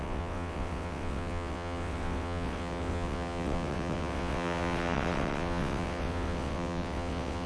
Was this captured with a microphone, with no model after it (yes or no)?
no